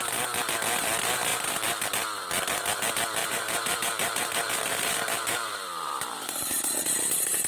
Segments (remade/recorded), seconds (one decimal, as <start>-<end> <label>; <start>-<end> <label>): 0.0-1.3 recorded; 1.3-1.9 remade; 1.9-3.2 recorded; 3.2-6.5 remade; 6.5-7.5 recorded